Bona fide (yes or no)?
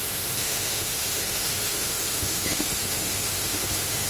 no